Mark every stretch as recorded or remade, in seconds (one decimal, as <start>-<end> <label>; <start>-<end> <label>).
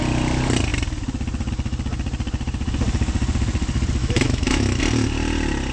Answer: 0.0-4.0 recorded; 4.0-4.8 remade; 4.8-5.7 recorded